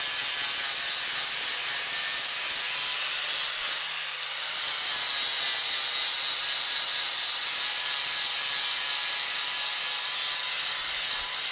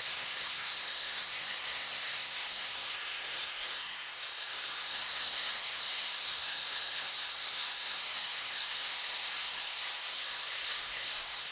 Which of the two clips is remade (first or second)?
second